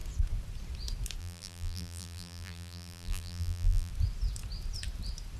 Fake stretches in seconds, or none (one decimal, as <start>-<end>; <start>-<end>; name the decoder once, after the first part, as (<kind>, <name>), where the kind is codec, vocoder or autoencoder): 1.2-3.9 (vocoder, BigVGAN v2)